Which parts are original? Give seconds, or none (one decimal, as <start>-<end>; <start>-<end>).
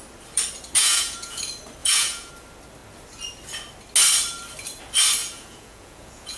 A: 0.0-0.8; 1.4-1.8; 2.3-5.2